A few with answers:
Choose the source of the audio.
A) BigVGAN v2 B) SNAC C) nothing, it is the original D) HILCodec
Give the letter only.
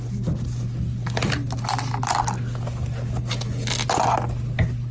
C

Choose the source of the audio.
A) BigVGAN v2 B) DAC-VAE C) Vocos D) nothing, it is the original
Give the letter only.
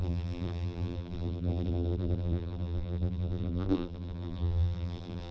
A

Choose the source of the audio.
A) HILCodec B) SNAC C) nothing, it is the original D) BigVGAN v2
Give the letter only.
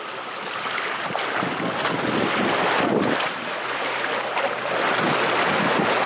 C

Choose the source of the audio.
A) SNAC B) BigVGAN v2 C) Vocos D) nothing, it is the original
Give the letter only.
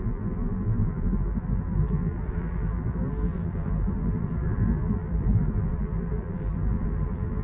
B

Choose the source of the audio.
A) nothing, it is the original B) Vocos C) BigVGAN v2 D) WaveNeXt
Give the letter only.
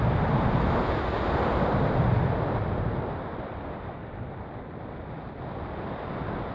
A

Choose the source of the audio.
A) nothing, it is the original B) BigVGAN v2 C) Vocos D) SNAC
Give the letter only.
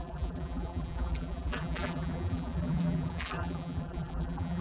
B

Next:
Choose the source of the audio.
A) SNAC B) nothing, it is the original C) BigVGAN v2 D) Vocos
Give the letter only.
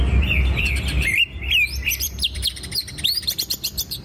C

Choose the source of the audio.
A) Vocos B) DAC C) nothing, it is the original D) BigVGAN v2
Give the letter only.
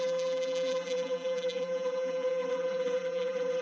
D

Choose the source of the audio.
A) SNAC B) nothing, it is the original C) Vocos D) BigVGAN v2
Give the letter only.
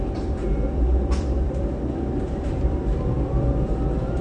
D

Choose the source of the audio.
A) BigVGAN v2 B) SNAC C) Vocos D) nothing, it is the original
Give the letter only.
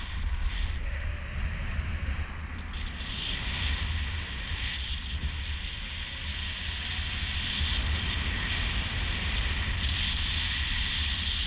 D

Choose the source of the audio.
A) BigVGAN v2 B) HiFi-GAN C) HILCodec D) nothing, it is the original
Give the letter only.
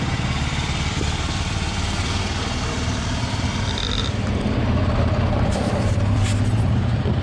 A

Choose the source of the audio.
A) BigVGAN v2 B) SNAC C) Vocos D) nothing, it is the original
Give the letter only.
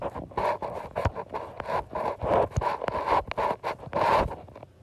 D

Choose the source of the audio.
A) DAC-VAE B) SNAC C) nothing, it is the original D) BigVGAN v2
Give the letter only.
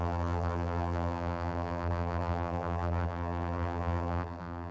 D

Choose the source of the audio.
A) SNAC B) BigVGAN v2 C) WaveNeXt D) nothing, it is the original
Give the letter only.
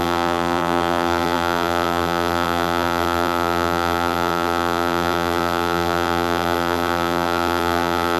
B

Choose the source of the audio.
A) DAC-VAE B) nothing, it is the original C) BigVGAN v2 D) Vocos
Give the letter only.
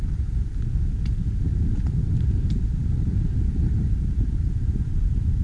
C